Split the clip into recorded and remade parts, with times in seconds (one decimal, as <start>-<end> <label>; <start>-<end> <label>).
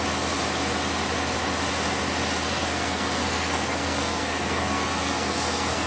0.0-2.4 recorded; 2.4-5.9 remade